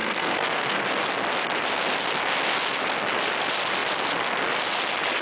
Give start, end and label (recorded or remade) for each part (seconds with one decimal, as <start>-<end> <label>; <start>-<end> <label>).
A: 0.0-0.8 remade; 0.8-5.2 recorded